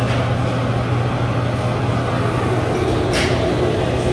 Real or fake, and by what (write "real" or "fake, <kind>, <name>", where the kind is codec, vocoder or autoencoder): real